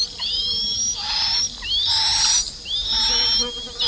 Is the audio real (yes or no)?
yes